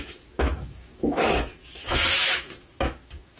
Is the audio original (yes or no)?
no